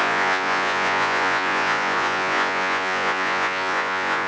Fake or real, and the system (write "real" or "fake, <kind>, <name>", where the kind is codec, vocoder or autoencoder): fake, vocoder, Vocos